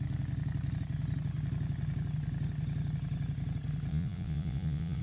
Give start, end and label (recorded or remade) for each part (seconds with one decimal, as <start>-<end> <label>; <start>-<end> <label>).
0.0-3.9 recorded; 3.9-5.0 remade